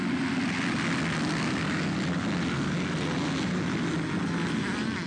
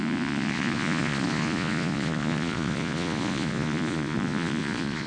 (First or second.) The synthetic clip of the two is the second